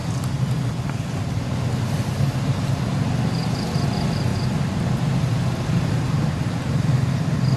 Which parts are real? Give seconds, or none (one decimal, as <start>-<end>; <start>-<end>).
0.0-7.6